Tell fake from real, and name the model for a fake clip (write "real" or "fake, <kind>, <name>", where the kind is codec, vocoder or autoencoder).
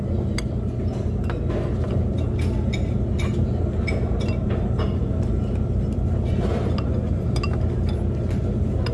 real